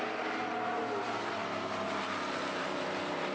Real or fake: real